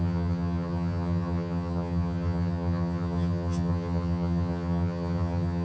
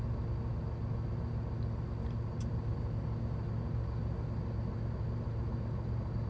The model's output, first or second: first